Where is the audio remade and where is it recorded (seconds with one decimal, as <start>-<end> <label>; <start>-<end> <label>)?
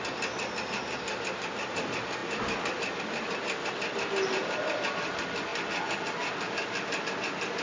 0.0-7.6 recorded